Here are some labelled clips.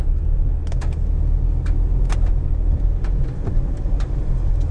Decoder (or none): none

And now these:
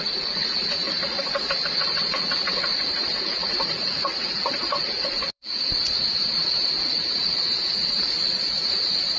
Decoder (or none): vocoder, Vocos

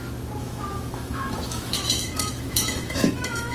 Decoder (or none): autoencoder, DAC-VAE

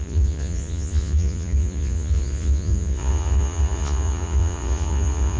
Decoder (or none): vocoder, Vocos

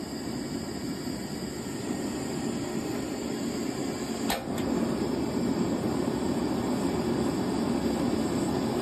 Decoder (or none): none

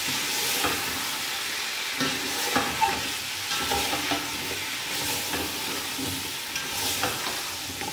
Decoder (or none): none